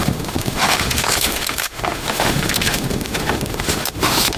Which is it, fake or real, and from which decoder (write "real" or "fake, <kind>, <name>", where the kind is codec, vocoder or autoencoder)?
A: fake, autoencoder, DAC-VAE